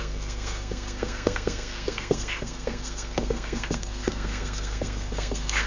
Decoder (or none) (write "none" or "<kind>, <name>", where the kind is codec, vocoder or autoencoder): codec, SNAC